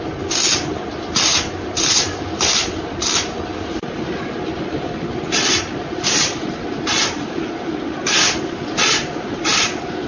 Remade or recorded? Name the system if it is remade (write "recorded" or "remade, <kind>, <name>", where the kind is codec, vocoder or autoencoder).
recorded